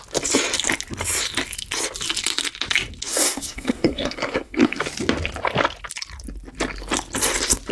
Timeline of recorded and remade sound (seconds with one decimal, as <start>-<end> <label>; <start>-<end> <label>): 0.0-3.1 recorded; 3.1-4.8 remade; 4.8-7.7 recorded